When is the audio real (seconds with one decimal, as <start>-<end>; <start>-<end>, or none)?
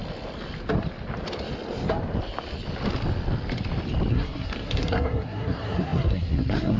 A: 0.0-4.1